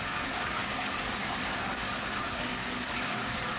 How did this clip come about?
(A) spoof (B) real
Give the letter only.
A